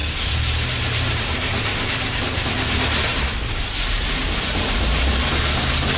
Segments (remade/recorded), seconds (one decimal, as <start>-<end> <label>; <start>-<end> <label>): 0.0-2.2 remade; 2.2-3.1 recorded; 3.1-5.1 remade; 5.1-6.0 recorded